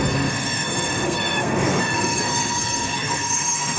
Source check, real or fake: fake